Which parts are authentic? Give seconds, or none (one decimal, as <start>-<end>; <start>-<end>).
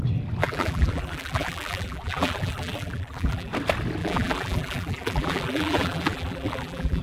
0.0-0.4; 3.5-4.0